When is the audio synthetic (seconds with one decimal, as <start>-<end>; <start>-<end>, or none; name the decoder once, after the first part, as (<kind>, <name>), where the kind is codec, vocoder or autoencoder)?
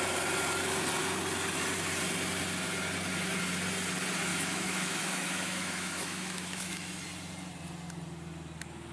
4.3-6.9 (autoencoder, DAC-VAE)